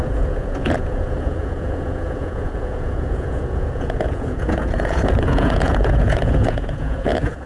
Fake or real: fake